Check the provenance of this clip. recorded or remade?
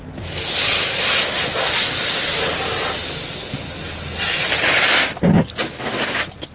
recorded